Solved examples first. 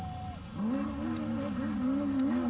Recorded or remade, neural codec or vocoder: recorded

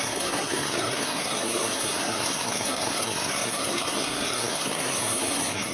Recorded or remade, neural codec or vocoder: remade, codec, SNAC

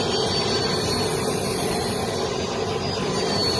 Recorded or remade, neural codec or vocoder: recorded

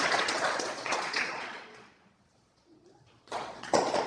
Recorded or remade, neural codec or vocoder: remade, vocoder, Vocos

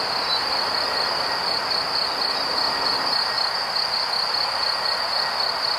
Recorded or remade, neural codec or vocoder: recorded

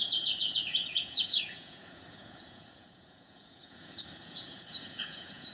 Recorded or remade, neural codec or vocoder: remade, vocoder, Vocos